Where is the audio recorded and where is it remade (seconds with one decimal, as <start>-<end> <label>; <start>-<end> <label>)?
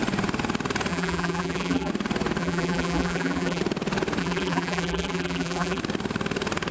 0.0-0.9 recorded; 0.9-1.9 remade; 1.9-2.4 recorded; 2.4-3.6 remade; 3.6-4.2 recorded; 4.2-5.8 remade; 5.8-6.7 recorded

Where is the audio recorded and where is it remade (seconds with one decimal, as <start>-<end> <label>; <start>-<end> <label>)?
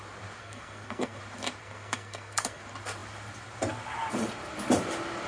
0.0-0.4 recorded; 0.4-1.2 remade; 1.2-1.6 recorded; 1.6-2.6 remade; 2.6-5.3 recorded